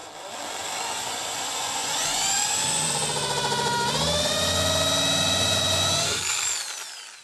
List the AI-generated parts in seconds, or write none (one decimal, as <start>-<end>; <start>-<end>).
0.8-3.0; 5.2-6.2